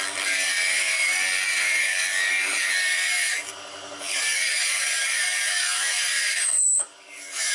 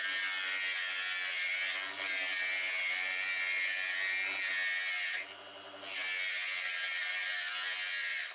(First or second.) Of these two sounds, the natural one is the second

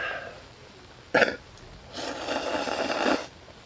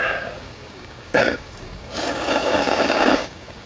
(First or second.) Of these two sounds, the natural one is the first